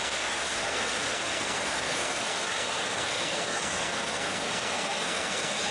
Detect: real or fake fake